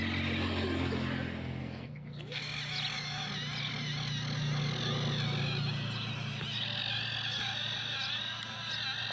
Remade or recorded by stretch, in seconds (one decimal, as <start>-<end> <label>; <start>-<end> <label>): 0.0-1.6 recorded; 1.6-2.4 remade; 2.4-9.1 recorded

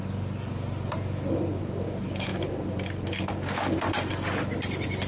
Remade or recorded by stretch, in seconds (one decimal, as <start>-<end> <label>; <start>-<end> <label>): 0.0-5.1 recorded

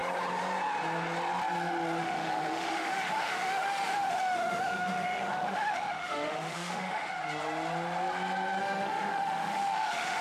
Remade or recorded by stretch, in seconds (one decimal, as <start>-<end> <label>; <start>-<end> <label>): 0.0-2.0 recorded; 2.0-7.1 remade; 7.1-8.6 recorded; 8.6-10.2 remade

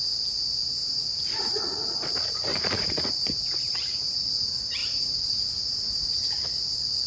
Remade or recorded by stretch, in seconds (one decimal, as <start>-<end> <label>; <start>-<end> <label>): 0.0-0.8 recorded; 0.8-1.9 remade; 1.9-2.5 recorded; 2.5-3.8 remade; 3.8-4.8 recorded; 4.8-6.1 remade; 6.1-7.1 recorded